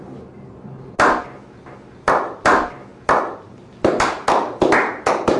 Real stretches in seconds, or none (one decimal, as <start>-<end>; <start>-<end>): 0.0-5.4